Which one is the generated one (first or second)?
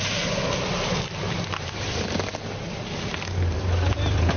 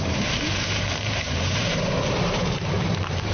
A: second